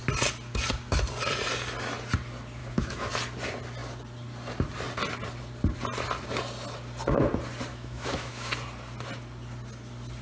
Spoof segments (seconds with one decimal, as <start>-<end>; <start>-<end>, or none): 2.6-3.1; 7.7-8.5